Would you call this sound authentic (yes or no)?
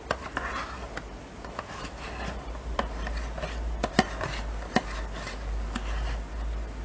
yes